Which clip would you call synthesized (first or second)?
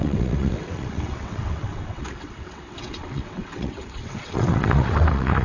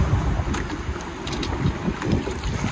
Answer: first